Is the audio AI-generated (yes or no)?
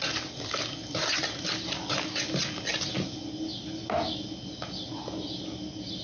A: no